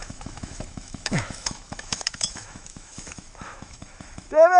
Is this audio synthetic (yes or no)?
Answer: yes